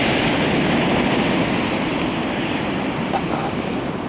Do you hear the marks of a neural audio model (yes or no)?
no